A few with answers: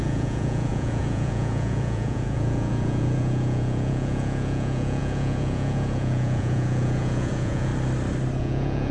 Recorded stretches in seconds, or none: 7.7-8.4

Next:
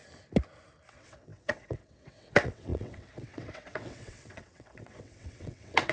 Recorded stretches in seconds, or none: 0.0-0.9